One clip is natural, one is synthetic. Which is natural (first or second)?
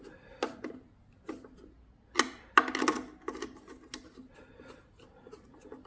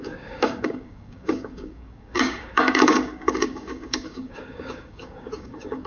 first